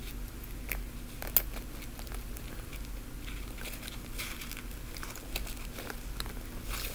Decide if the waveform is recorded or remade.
recorded